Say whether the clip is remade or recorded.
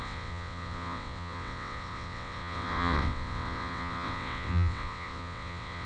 remade